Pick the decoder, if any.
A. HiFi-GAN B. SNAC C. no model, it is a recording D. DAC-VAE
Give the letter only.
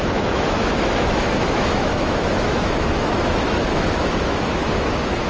D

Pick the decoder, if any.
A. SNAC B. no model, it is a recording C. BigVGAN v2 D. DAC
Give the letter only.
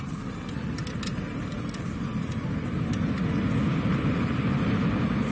B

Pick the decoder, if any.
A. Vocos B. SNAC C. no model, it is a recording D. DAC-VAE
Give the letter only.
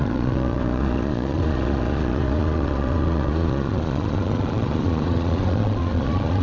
A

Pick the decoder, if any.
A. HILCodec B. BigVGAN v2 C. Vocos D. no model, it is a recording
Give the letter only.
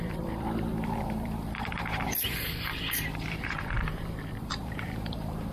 B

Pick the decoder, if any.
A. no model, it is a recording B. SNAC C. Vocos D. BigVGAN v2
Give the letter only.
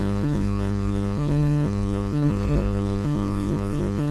B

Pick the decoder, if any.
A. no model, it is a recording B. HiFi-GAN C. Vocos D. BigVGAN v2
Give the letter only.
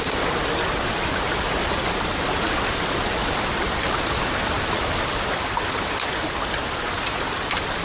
A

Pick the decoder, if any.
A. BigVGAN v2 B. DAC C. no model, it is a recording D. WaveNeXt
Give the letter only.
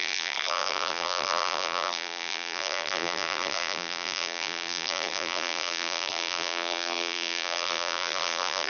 A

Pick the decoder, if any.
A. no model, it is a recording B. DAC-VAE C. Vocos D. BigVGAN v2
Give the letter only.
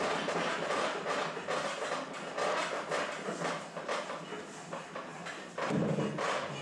A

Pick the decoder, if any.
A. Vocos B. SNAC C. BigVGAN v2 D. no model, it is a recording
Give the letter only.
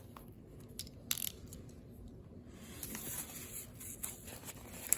D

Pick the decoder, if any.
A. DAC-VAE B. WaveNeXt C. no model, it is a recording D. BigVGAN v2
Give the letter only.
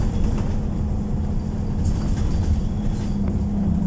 C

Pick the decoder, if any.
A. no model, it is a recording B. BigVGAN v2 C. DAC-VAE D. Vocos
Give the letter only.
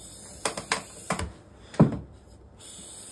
A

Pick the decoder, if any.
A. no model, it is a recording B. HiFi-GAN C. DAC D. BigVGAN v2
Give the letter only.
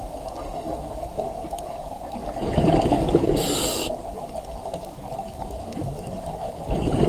C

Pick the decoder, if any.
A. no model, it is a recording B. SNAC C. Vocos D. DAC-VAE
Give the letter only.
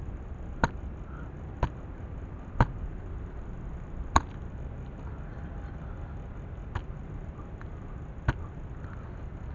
A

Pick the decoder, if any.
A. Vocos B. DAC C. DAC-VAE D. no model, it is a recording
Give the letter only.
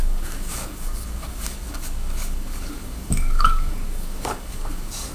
B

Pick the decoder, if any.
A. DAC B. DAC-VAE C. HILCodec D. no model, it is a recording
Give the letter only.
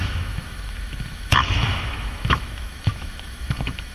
B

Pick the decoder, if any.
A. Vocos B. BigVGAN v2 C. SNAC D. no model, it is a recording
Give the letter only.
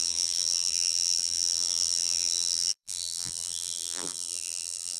B